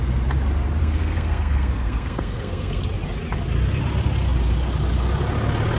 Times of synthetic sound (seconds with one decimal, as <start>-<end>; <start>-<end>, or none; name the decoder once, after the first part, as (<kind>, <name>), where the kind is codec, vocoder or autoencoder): 0.8-2.8 (codec, SNAC)